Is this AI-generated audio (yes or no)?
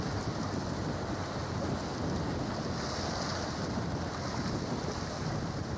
no